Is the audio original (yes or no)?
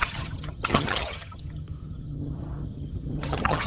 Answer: no